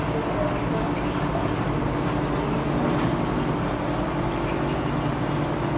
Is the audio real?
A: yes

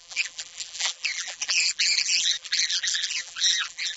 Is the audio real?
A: no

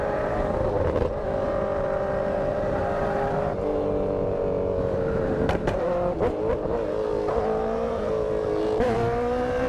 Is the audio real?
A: no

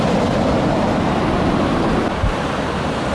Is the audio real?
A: yes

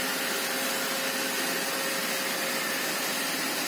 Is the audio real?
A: yes